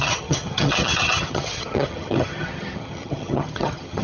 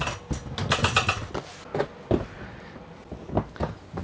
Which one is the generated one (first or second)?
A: first